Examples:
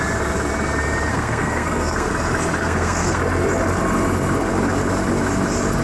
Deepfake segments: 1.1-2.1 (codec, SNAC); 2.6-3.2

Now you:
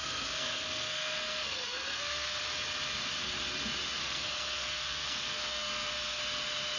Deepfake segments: 0.0-2.4 (codec, SNAC); 4.0-6.2